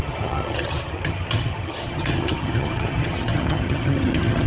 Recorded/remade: remade